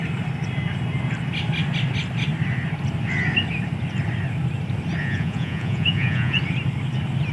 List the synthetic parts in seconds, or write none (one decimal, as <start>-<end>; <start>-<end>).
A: 5.0-6.4